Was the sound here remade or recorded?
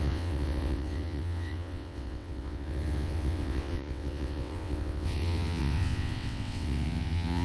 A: remade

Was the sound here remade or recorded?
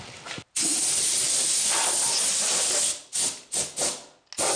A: recorded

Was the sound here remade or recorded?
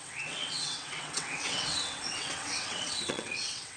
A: remade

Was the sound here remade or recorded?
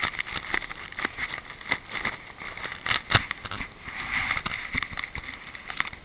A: recorded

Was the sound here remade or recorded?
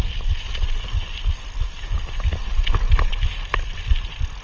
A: recorded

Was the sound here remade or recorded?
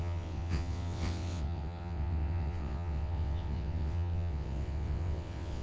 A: remade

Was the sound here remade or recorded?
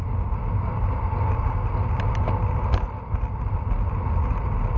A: recorded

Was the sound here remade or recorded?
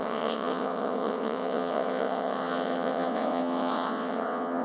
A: remade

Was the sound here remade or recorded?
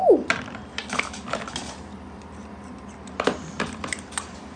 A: recorded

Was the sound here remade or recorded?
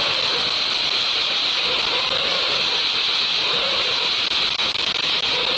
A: recorded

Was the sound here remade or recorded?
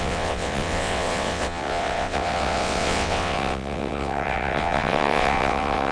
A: remade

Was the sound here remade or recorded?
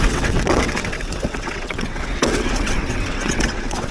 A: remade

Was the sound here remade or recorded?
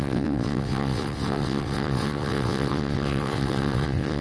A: remade